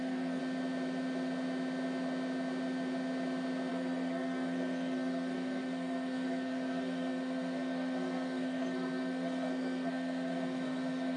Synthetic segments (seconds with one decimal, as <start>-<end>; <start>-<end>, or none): 0.0-0.4; 3.7-11.2